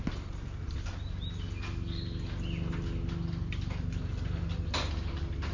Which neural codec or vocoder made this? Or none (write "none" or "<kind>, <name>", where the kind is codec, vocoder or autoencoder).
none